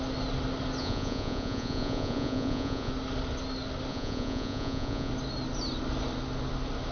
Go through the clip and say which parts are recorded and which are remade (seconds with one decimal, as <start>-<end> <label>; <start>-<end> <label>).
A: 0.0-0.8 recorded; 0.8-2.9 remade; 2.9-3.9 recorded; 3.9-5.1 remade; 5.1-6.9 recorded